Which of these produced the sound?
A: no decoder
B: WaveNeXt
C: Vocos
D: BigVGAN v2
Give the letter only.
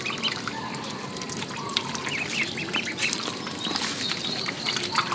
A